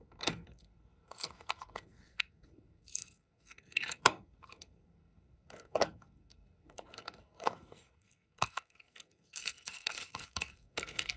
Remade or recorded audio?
remade